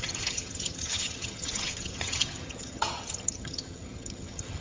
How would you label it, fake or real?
fake